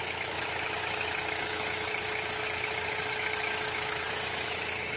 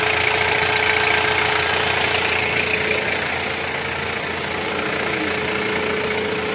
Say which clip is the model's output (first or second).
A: first